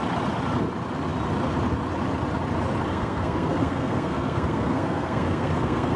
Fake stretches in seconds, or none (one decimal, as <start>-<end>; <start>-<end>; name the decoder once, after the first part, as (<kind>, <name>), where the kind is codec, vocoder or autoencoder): 2.9-6.0 (codec, SNAC)